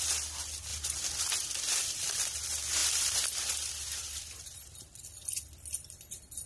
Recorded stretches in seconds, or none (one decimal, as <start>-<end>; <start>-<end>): 0.7-1.2